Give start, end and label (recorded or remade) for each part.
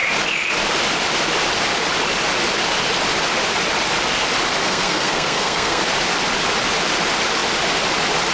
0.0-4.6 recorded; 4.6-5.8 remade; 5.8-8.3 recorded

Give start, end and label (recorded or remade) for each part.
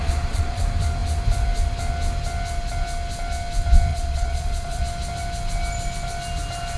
0.0-0.6 remade; 0.6-3.9 recorded; 3.9-4.8 remade; 4.8-6.8 recorded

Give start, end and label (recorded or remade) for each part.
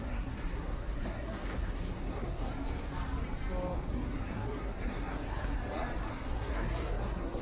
0.0-2.5 remade; 2.5-3.9 recorded; 3.9-5.6 remade; 5.6-6.1 recorded; 6.1-7.4 remade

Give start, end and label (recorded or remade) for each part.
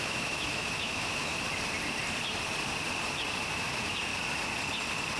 0.0-1.3 remade; 1.3-3.5 recorded; 3.5-4.1 remade; 4.1-5.2 recorded